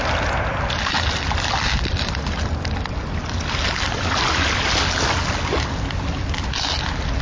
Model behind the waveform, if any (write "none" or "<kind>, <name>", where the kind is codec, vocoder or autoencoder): none